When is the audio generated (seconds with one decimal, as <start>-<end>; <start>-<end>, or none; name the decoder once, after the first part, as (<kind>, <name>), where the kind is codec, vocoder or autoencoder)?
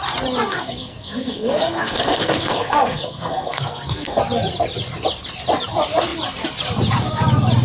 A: 0.5-4.2 (codec, SNAC)